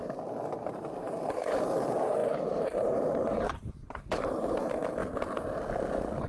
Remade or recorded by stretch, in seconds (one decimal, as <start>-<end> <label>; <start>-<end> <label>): 0.0-0.6 recorded; 0.6-5.0 remade; 5.0-6.3 recorded